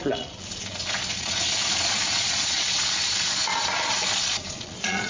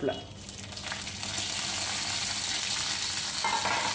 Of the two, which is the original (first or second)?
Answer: second